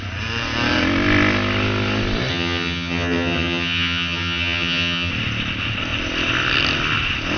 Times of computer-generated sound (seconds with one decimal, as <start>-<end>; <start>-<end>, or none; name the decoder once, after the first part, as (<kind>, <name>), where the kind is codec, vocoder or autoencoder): 2.3-5.1 (vocoder, HiFi-GAN)

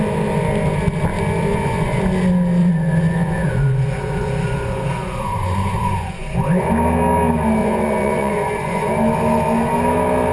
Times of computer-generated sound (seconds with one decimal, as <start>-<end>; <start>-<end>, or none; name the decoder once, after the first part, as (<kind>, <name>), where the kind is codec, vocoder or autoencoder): 1.5-2.0 (vocoder, Vocos); 2.6-6.7; 7.6-8.9

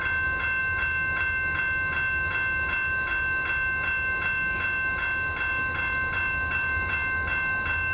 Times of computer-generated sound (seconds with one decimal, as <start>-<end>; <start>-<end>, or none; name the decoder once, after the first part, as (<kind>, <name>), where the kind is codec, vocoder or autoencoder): none

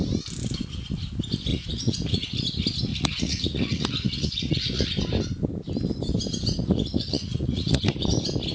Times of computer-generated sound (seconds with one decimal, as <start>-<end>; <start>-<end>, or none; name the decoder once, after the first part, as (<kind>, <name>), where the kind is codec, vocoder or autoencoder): 1.5-2.4 (vocoder, Vocos); 2.9-4.9; 6.6-8.1

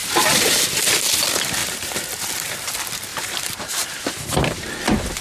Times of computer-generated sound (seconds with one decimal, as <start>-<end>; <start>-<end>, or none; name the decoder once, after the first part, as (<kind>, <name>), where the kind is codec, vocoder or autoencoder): 0.0-0.5 (vocoder, BigVGAN v2); 1.6-2.7; 3.1-3.9

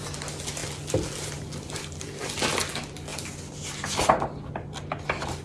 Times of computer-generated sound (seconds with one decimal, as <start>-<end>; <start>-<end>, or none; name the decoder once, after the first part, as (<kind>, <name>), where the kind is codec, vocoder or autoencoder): none